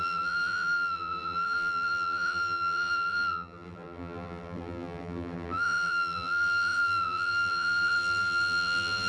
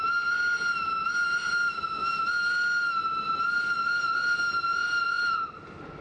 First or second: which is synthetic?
first